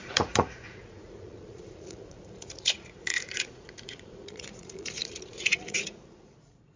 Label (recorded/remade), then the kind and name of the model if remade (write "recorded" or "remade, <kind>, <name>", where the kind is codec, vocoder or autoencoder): remade, vocoder, Vocos